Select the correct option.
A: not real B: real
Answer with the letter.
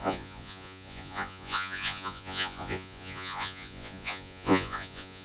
A